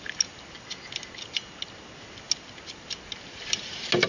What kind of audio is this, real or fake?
real